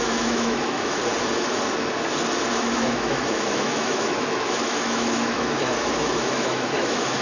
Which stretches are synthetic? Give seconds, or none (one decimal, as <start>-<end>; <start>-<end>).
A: 0.0-1.0; 2.5-7.2